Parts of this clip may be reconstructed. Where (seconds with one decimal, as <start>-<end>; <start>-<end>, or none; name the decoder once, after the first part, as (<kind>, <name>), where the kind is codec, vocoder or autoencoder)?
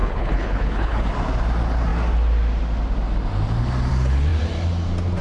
0.0-1.1 (codec, HILCodec)